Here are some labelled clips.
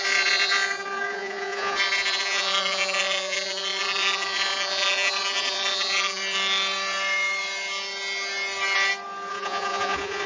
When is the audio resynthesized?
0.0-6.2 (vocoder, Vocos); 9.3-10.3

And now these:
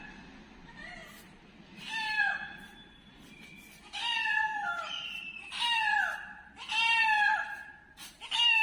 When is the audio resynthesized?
none

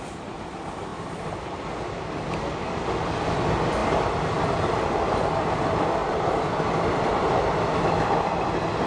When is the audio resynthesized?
0.9-1.6 (vocoder, BigVGAN v2); 6.0-7.2

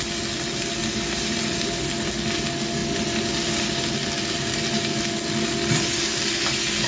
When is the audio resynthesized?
none

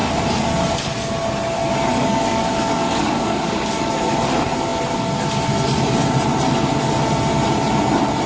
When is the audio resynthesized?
1.9-3.9 (codec, DAC)

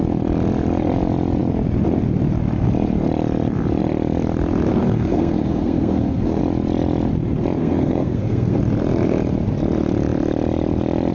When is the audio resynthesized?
4.7-6.4 (codec, SNAC); 7.6-8.6

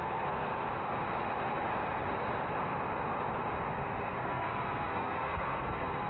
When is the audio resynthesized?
0.0-0.5 (codec, SNAC); 4.0-6.1